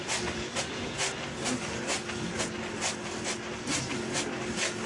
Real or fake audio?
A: real